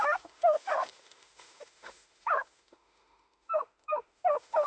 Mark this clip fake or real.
fake